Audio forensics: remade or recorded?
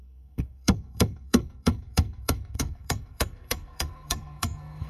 remade